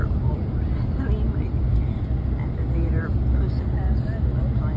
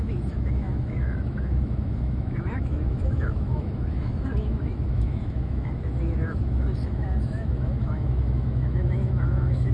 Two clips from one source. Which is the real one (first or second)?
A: first